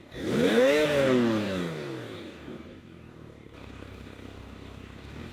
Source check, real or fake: fake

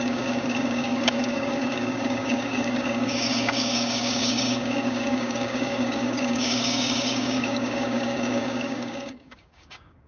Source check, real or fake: fake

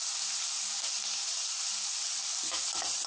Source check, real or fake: real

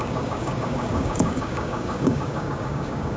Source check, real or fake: fake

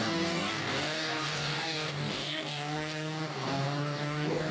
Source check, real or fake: fake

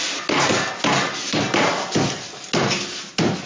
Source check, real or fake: real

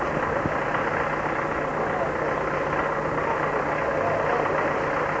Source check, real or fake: real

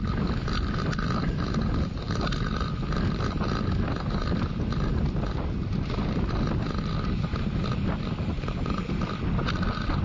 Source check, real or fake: real